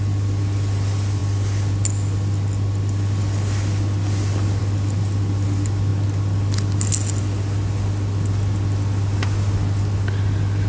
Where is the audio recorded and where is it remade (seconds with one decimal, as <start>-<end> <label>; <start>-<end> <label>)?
0.0-10.7 recorded